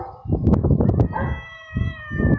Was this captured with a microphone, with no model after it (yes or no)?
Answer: yes